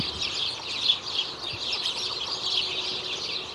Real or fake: real